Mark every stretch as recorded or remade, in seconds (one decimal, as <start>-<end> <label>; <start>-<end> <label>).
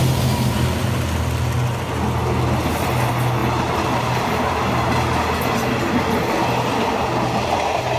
0.0-8.0 recorded